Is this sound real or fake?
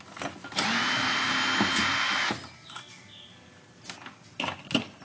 real